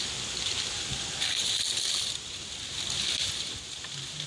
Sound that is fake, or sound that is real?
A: real